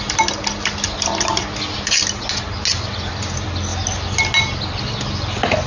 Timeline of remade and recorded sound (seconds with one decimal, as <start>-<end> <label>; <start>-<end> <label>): 0.0-5.7 recorded